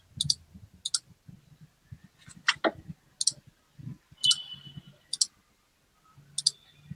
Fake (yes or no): no